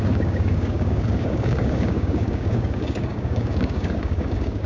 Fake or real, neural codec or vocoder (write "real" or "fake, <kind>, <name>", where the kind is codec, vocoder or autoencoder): fake, codec, DAC